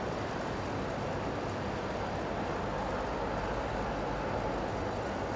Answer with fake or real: real